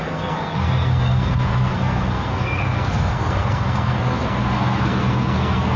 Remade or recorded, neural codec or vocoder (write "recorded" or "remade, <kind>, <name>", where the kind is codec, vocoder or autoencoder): remade, codec, SNAC